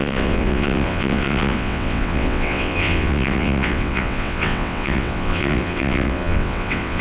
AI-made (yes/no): yes